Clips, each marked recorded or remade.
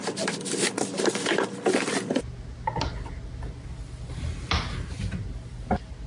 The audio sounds recorded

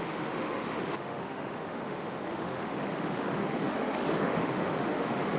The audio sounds remade